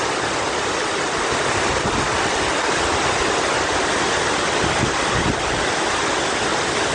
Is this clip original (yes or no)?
yes